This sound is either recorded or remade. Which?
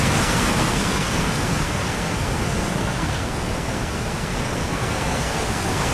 remade